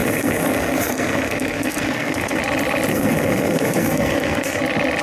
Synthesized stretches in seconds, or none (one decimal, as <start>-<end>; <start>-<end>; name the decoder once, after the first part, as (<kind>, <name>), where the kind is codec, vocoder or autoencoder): 0.0-2.4 (codec, SNAC); 2.9-4.6